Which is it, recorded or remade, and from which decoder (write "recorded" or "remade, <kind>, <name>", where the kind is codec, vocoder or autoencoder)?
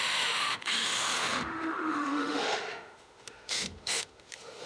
remade, autoencoder, DAC-VAE